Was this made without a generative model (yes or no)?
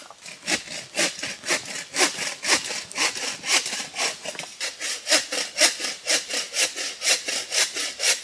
yes